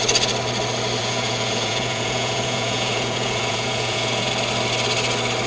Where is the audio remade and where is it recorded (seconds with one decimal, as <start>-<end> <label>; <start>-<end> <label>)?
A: 0.0-1.0 recorded; 1.0-4.3 remade; 4.3-5.5 recorded